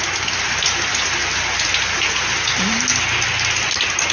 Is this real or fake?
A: real